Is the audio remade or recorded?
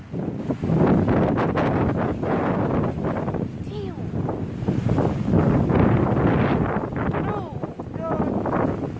recorded